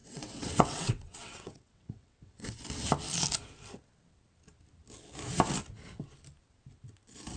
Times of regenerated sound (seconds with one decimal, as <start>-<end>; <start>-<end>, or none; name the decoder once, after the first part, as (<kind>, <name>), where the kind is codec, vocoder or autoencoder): 0.0-2.6 (vocoder, WaveNeXt)